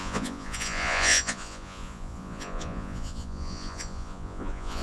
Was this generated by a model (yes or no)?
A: yes